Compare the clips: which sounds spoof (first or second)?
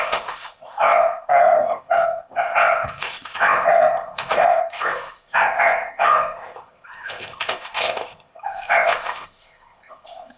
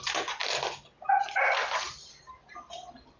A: first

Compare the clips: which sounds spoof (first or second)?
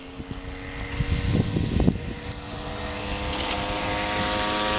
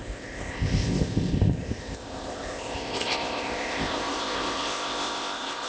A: second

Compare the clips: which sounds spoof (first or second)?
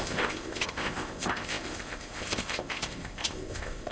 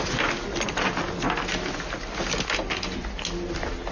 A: first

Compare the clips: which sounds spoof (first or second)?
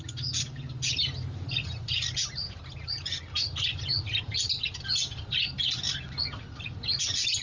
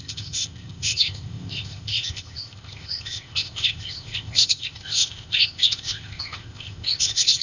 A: second